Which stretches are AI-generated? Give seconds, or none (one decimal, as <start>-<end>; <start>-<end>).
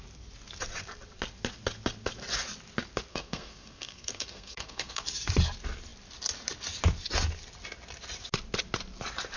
3.1-5.0